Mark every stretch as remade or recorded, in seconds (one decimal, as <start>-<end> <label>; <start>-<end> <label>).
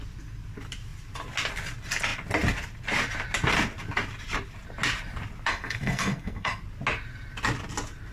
0.0-5.5 recorded; 5.5-6.6 remade; 6.6-8.1 recorded